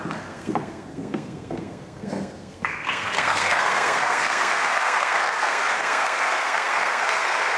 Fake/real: fake